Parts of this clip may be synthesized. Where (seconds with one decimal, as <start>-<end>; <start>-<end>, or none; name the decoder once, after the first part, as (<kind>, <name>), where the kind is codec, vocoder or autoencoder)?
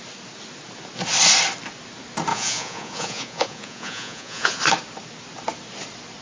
2.3-4.6 (vocoder, Vocos)